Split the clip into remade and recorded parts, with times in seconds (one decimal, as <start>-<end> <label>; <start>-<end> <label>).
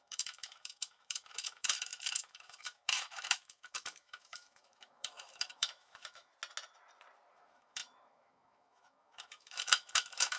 0.0-6.3 remade; 6.3-7.3 recorded; 7.3-10.4 remade